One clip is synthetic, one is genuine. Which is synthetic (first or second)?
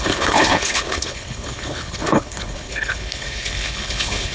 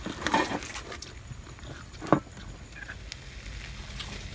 first